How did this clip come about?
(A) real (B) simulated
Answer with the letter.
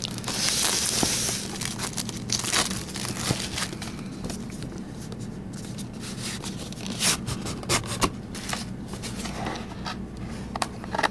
A